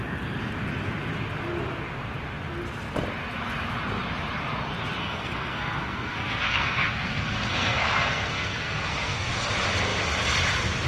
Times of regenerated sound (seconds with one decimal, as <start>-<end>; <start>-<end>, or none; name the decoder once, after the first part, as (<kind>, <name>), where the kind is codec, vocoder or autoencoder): 5.0-9.3 (codec, SNAC)